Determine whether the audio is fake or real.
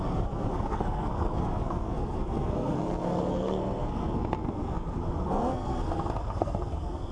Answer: fake